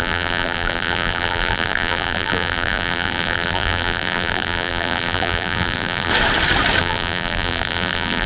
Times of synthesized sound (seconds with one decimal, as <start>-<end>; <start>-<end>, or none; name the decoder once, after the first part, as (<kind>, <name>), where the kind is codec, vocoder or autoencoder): 0.0-6.1 (vocoder, BigVGAN v2); 6.8-8.3